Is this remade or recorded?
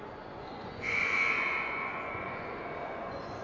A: remade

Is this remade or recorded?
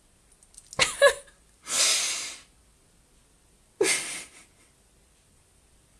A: recorded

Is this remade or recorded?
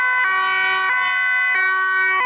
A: recorded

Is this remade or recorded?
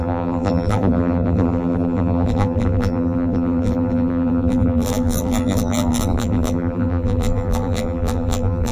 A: remade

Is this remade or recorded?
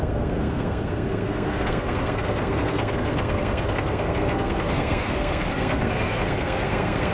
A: remade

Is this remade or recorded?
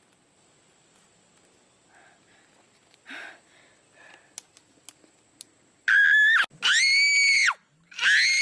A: recorded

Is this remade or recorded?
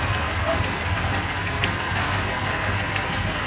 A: remade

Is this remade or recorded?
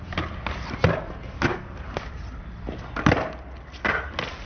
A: recorded